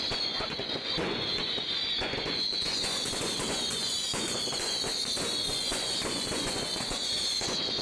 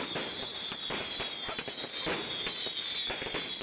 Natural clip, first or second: second